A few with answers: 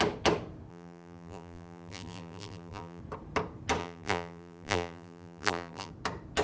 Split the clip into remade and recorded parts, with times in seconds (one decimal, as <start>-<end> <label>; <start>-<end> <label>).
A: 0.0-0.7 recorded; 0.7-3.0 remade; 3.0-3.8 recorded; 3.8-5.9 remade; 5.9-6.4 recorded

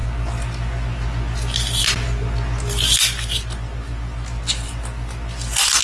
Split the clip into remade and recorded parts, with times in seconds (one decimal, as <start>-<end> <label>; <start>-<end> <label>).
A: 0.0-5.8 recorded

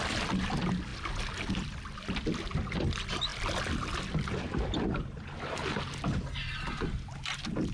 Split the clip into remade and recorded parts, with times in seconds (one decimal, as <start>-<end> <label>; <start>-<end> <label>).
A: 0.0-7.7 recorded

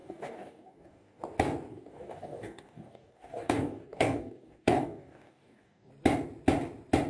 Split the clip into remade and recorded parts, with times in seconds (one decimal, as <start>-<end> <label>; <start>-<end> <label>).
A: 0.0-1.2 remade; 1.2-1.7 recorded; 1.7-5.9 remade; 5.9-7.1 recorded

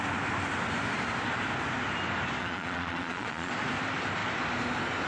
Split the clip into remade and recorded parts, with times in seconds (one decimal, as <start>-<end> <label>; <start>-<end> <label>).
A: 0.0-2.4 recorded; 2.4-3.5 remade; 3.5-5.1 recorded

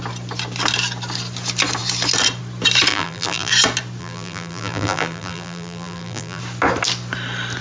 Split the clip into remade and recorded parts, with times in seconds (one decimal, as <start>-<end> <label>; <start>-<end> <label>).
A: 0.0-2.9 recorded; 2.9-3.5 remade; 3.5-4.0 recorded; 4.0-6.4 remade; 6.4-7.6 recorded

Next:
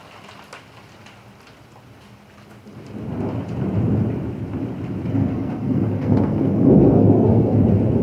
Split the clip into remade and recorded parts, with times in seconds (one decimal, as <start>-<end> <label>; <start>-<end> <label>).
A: 0.0-5.1 recorded; 5.1-7.6 remade; 7.6-8.0 recorded

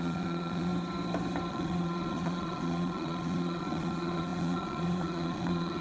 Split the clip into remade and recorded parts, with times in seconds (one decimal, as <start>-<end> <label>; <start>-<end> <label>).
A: 0.0-0.7 remade; 0.7-1.5 recorded; 1.5-5.8 remade